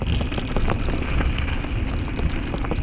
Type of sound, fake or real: real